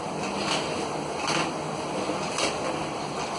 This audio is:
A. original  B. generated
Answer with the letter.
A